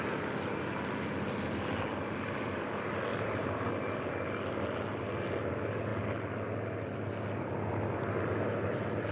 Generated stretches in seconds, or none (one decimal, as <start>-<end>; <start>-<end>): 3.1-3.7